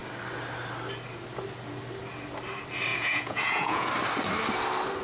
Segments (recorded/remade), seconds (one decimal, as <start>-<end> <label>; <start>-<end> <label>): 0.0-2.9 recorded; 2.9-3.9 remade; 3.9-5.0 recorded